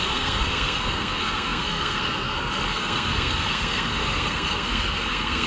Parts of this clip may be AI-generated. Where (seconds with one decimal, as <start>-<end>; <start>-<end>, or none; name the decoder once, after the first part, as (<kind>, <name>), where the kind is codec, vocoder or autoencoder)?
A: 0.0-5.5 (codec, SNAC)